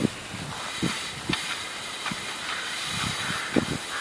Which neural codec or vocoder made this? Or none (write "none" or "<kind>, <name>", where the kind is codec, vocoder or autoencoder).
none